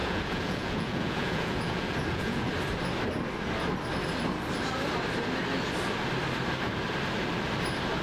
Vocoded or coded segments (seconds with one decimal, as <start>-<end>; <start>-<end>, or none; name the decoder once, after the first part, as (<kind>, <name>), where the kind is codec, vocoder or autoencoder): 0.0-2.5 (vocoder, Vocos)

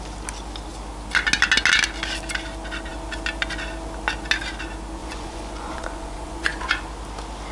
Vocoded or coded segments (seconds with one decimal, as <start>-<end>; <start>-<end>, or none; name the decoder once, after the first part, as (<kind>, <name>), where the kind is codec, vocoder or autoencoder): 5.0-6.8 (vocoder, Vocos)

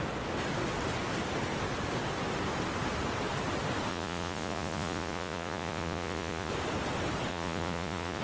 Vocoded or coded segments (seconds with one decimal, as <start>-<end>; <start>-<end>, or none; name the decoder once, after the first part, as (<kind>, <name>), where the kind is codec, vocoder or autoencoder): 3.9-6.5 (vocoder, Vocos); 7.3-8.2

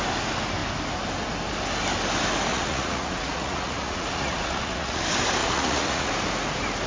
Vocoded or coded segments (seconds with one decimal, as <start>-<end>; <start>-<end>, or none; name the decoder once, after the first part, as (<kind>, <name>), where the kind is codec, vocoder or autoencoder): 2.5-5.0 (vocoder, Vocos); 5.4-6.1